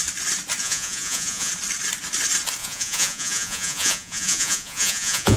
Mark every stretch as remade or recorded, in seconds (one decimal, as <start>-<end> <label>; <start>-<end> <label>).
0.0-0.6 recorded; 0.6-1.5 remade; 1.5-2.6 recorded; 2.6-5.4 remade